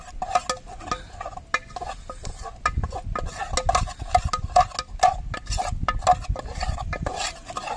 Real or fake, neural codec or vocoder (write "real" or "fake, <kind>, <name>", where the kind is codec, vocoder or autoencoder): real